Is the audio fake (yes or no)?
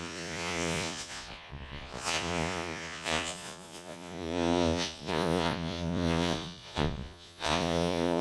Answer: yes